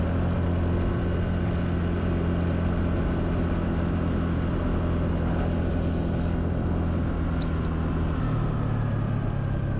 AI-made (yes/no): no